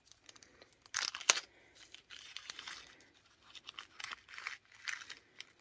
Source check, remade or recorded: recorded